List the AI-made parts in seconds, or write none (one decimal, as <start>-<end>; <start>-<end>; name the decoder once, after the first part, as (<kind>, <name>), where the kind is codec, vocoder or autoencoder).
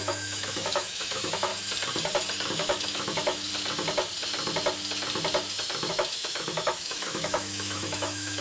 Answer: 0.0-1.5 (autoencoder, DAC-VAE); 2.5-3.5; 5.9-8.4